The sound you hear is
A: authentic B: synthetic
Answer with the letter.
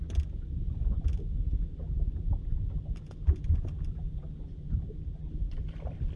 A